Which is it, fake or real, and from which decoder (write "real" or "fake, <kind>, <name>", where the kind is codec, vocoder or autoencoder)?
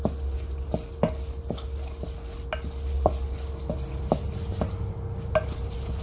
real